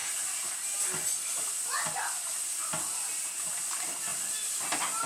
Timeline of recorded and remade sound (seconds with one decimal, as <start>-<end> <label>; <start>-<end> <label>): 0.0-5.1 recorded